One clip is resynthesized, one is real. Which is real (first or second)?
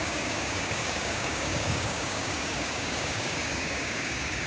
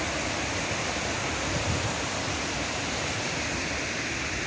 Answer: second